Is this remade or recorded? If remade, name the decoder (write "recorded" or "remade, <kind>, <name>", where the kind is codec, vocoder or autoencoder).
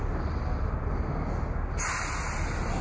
recorded